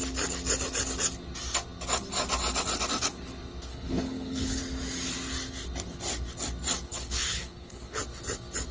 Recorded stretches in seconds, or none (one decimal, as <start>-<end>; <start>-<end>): 0.0-3.7; 4.6-6.9; 8.0-8.7